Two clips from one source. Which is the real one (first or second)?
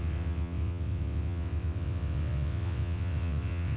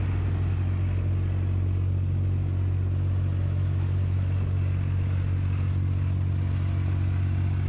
second